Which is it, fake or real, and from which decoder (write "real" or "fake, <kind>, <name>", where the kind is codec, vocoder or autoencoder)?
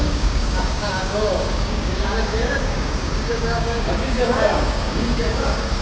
fake, codec, DAC